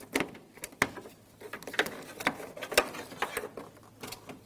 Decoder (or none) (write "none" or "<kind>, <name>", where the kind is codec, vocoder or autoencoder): none